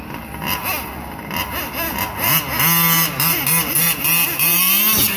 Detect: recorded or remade recorded